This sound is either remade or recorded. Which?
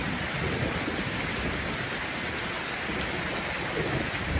recorded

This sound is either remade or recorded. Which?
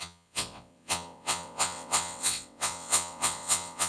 remade